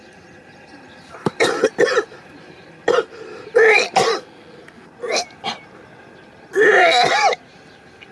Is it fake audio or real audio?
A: fake